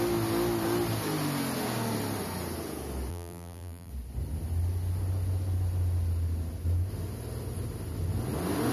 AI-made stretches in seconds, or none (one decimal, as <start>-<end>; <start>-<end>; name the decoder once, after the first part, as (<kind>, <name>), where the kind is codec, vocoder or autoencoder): 3.1-3.9 (vocoder, BigVGAN v2)